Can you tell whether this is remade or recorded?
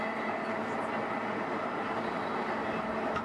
recorded